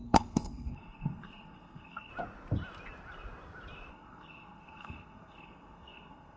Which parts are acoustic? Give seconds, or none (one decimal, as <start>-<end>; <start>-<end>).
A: 2.1-3.9